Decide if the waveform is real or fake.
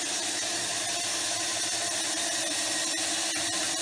real